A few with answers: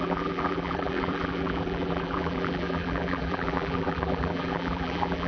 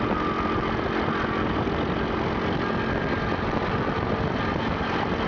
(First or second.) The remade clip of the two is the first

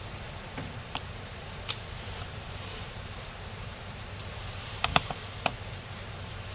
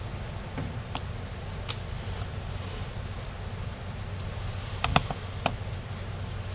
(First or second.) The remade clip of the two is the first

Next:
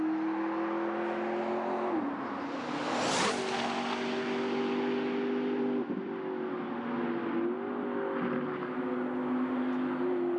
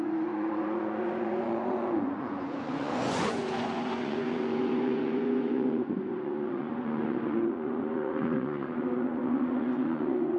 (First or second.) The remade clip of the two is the second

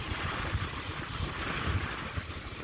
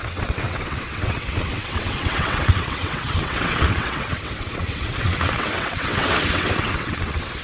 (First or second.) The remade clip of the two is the second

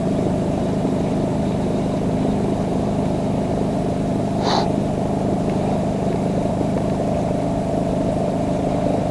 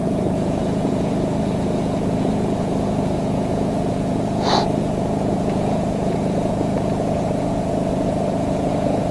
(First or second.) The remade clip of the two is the second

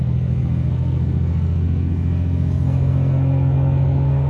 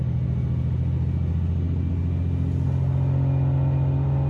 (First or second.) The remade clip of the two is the first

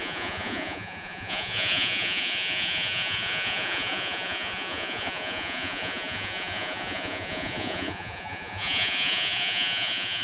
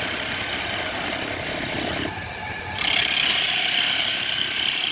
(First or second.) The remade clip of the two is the first